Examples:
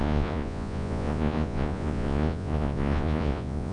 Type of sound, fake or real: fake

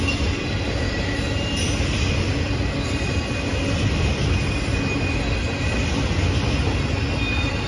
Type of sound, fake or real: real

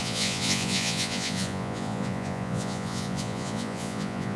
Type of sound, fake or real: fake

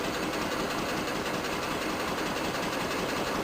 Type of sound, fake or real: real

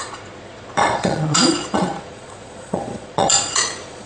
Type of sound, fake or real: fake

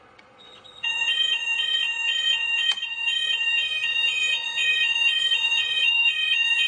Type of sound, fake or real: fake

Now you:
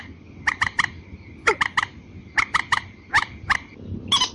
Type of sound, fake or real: real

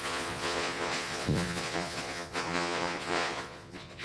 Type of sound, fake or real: fake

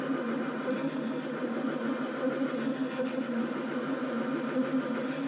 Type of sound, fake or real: real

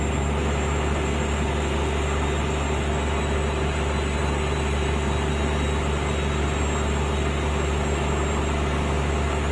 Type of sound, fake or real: real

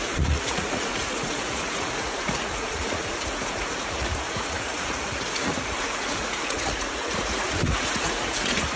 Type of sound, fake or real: fake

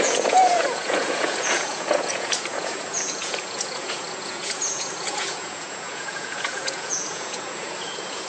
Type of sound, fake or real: fake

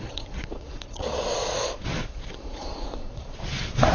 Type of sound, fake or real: fake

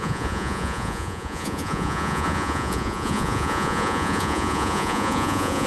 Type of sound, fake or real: fake